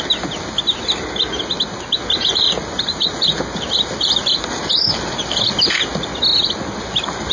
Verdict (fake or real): real